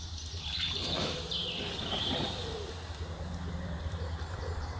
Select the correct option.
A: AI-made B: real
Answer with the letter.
A